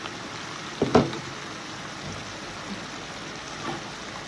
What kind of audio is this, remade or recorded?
recorded